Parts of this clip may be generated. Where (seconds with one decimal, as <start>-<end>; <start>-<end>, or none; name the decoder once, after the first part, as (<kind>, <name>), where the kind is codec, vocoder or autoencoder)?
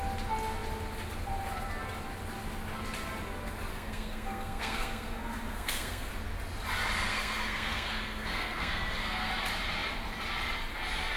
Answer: 3.7-6.1 (codec, SNAC); 7.1-9.3